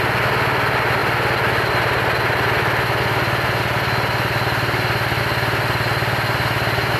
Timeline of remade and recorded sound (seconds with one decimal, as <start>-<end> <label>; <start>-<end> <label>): 0.0-7.0 recorded